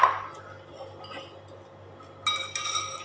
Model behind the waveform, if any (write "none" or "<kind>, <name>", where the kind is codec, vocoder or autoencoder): none